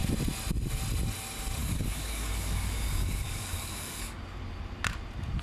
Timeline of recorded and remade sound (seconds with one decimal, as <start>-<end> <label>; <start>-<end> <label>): 0.0-1.6 recorded; 1.6-4.2 remade; 4.2-5.4 recorded